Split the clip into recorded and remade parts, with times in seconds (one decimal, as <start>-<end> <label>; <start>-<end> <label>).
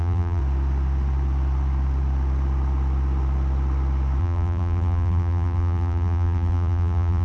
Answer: 0.0-0.4 remade; 0.4-4.2 recorded; 4.2-7.2 remade